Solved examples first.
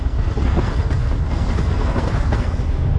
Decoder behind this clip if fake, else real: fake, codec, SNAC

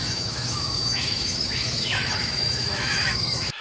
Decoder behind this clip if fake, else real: fake, autoencoder, DAC-VAE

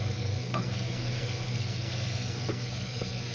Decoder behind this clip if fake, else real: fake, codec, SNAC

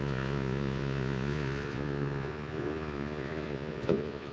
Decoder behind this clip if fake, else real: fake, vocoder, Vocos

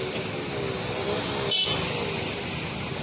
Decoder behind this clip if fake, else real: real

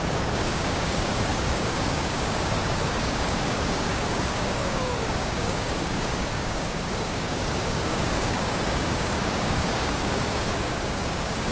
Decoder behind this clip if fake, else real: fake, codec, DAC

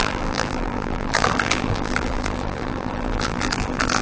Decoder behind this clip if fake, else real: fake, vocoder, BigVGAN v2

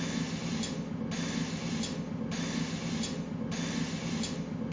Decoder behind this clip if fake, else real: real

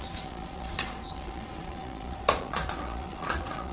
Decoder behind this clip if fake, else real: fake, vocoder, Vocos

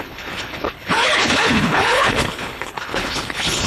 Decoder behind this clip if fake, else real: fake, codec, HILCodec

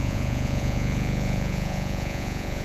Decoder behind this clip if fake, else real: fake, vocoder, Vocos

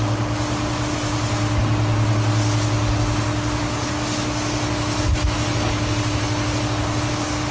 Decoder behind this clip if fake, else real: real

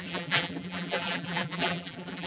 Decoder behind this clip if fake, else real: fake, vocoder, BigVGAN v2